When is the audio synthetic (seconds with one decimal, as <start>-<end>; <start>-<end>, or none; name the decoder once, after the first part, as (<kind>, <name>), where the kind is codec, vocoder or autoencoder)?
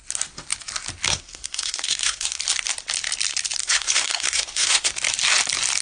1.1-2.4 (codec, SNAC); 3.6-4.9